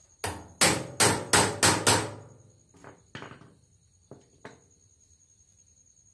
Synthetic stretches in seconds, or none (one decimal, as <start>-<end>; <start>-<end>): none